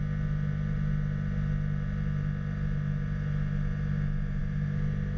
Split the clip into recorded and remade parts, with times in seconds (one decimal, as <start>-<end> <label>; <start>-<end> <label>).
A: 0.0-5.2 recorded